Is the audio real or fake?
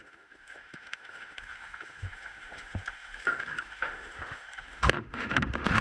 fake